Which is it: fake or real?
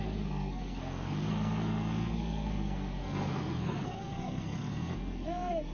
fake